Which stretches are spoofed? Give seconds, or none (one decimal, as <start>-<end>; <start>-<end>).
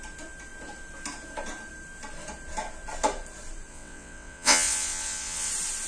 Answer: 3.7-5.5